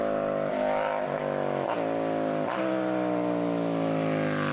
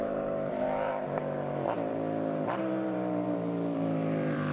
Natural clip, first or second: first